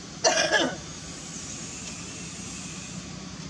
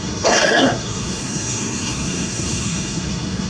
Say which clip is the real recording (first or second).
first